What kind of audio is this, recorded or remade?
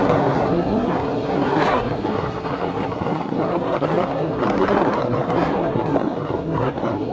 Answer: remade